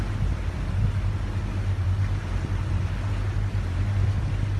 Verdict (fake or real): real